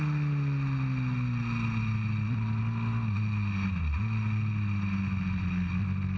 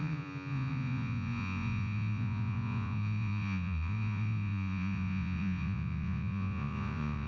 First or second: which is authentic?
first